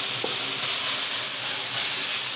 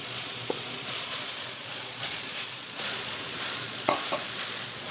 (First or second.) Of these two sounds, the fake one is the second